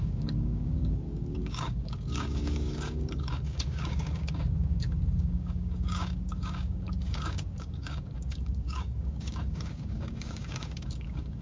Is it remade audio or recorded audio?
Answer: remade